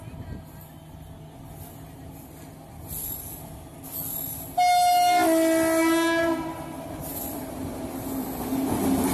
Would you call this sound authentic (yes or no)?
yes